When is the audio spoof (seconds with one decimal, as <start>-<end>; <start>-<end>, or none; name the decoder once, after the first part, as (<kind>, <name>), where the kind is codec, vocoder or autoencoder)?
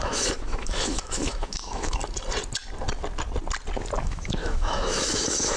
0.0-2.0 (autoencoder, DAC-VAE); 4.0-5.6